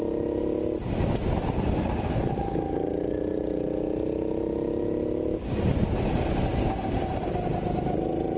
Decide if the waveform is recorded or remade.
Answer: recorded